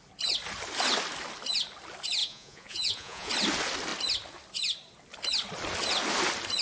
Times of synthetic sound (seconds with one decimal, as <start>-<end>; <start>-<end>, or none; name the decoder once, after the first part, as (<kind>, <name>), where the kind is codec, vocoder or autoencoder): 2.2-3.3 (vocoder, Vocos)